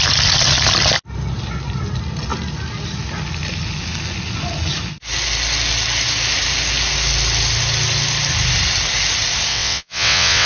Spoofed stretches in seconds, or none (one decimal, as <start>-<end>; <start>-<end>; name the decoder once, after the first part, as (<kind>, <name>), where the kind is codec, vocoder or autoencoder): 9.5-10.5 (vocoder, WaveNeXt)